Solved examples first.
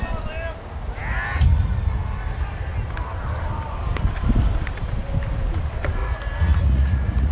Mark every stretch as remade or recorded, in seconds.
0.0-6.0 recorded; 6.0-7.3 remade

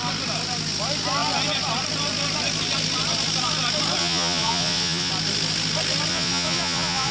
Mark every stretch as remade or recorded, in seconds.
0.0-4.0 recorded; 4.0-5.1 remade; 5.1-6.1 recorded; 6.1-7.1 remade

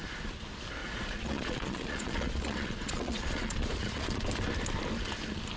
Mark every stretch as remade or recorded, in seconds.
0.0-0.8 recorded; 0.8-4.2 remade; 4.2-5.6 recorded

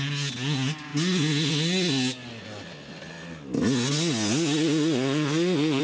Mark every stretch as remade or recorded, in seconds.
0.0-5.8 recorded

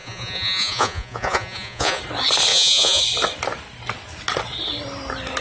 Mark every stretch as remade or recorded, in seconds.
0.0-2.0 remade; 2.0-2.5 recorded; 2.5-3.0 remade; 3.0-5.4 recorded

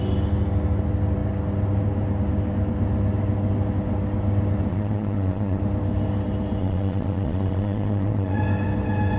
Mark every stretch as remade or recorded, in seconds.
0.0-4.7 recorded; 4.7-5.6 remade; 5.6-6.6 recorded; 6.6-8.4 remade; 8.4-9.2 recorded